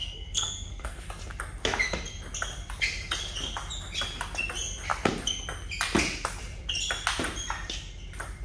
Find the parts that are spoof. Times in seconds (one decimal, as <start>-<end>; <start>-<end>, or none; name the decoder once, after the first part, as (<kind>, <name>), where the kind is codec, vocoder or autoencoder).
0.0-1.0 (codec, SNAC)